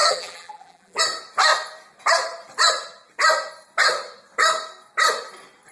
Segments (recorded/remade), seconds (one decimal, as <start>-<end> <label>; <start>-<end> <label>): 0.0-1.0 remade; 1.0-5.7 recorded